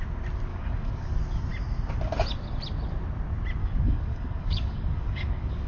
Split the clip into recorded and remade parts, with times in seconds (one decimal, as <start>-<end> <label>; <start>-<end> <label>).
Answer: 0.0-0.5 recorded; 0.5-1.1 remade; 1.1-3.6 recorded; 3.6-5.7 remade